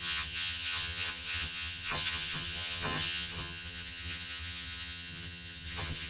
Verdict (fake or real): fake